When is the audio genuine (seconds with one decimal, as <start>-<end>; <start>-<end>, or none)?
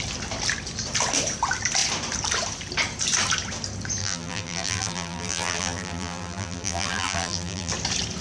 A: 0.0-4.0; 7.7-8.2